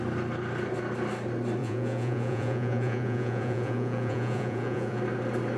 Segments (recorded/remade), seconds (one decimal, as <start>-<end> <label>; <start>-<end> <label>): 0.0-1.6 recorded; 1.6-5.0 remade; 5.0-5.6 recorded